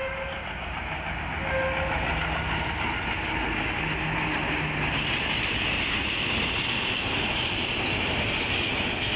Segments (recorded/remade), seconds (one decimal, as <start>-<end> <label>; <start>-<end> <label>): 0.0-9.2 recorded